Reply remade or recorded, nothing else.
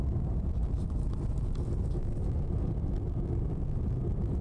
recorded